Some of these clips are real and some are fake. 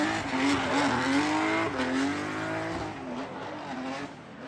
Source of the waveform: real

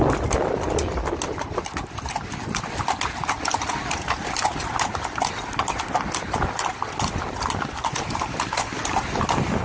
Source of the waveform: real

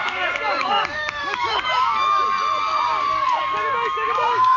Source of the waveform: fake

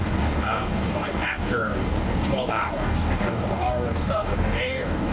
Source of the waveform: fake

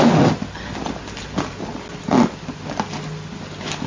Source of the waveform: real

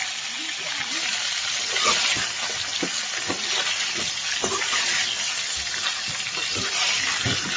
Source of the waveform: real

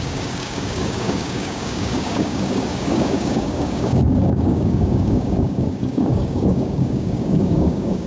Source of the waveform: fake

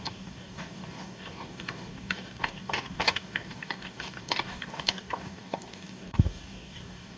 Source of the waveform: fake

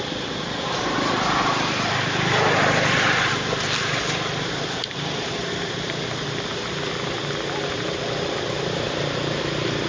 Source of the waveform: real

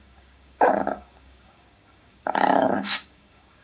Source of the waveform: fake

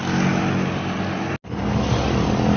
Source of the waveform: real